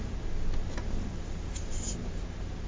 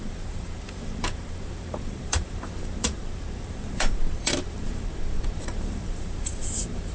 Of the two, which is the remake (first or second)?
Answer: second